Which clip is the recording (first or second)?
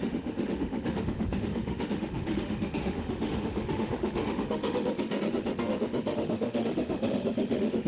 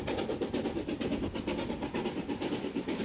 second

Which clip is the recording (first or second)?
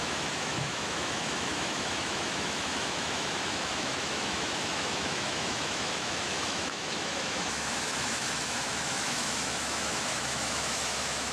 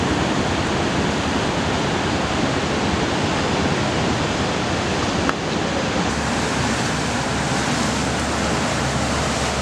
second